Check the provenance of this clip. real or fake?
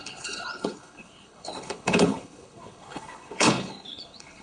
fake